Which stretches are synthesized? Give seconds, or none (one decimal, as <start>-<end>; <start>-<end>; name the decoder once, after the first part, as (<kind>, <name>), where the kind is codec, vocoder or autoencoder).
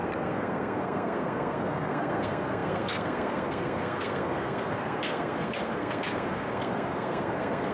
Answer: 0.0-7.7 (codec, SNAC)